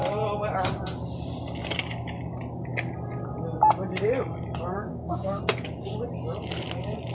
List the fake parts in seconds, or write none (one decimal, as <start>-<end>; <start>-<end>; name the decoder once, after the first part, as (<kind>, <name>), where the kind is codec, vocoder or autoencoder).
4.9-5.4 (codec, SNAC)